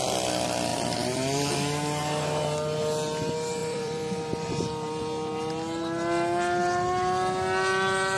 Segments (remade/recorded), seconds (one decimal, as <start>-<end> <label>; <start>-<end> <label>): 0.0-0.7 recorded; 0.7-1.5 remade; 1.5-3.6 recorded; 3.6-4.6 remade; 4.6-8.2 recorded